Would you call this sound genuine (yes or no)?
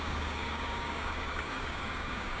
no